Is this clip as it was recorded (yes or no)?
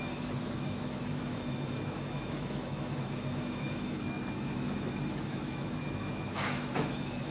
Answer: no